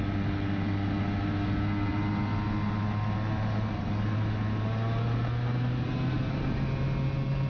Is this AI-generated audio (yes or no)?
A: no